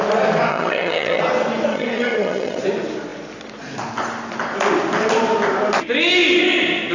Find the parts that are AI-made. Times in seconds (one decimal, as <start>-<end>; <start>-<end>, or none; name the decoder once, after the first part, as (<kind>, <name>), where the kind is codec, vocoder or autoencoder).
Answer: 0.5-1.2 (vocoder, HiFi-GAN); 1.7-2.6